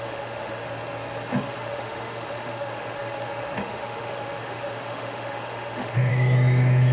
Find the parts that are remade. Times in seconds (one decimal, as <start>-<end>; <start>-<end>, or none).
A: 0.0-0.6; 1.3-6.9